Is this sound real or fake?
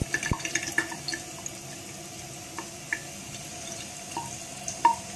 real